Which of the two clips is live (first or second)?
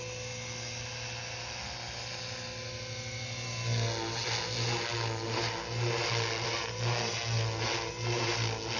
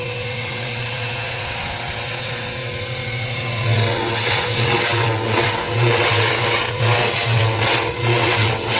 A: first